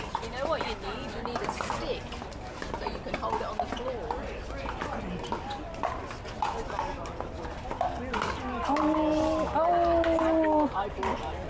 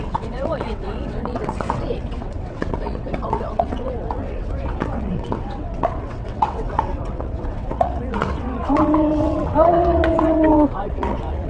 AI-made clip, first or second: second